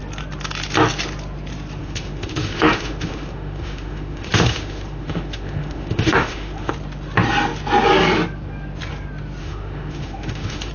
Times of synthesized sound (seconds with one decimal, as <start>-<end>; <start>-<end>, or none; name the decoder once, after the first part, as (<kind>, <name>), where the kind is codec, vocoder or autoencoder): 1.8-6.7 (autoencoder, DAC-VAE); 9.4-10.7